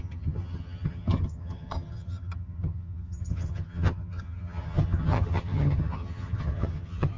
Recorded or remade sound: remade